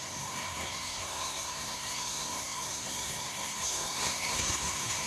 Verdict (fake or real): fake